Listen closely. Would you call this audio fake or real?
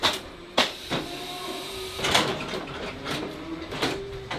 fake